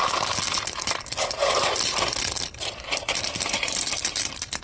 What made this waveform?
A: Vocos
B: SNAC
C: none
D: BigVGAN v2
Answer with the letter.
C